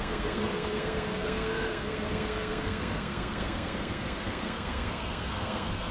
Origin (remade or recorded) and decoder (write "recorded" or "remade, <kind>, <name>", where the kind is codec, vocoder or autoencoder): remade, codec, SNAC